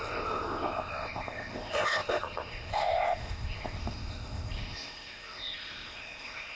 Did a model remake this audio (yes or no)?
yes